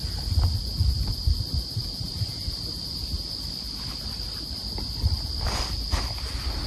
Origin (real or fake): real